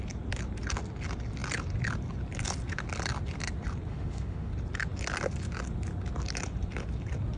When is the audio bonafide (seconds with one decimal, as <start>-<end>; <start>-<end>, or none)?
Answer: 0.0-3.9; 4.5-7.4